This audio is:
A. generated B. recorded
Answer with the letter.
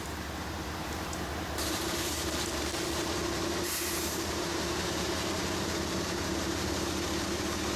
A